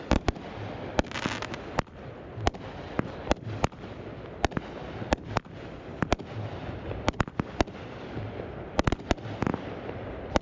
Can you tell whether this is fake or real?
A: real